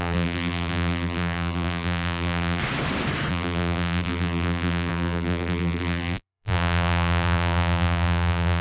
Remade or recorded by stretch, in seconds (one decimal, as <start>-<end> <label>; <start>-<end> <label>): 0.0-2.6 remade; 2.6-3.3 recorded; 3.3-8.6 remade